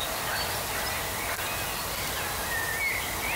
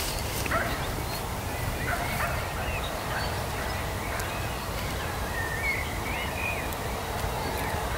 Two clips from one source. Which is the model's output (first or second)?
second